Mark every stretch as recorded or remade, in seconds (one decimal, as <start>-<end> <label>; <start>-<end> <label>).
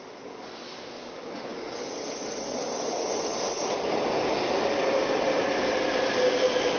0.0-6.8 recorded